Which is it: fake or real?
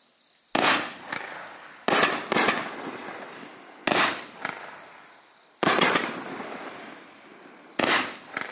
real